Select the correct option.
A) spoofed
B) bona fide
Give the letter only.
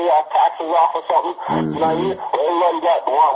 B